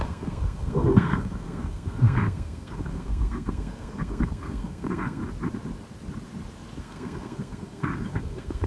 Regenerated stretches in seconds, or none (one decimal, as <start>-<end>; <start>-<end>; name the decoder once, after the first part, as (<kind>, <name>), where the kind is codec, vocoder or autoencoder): 0.0-5.2 (codec, SNAC); 6.8-8.7